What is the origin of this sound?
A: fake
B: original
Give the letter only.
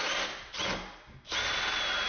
B